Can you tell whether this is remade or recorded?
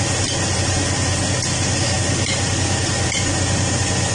recorded